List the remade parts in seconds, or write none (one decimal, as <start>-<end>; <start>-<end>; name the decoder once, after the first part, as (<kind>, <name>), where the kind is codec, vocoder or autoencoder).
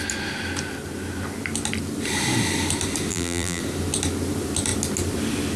3.1-3.6 (vocoder, BigVGAN v2)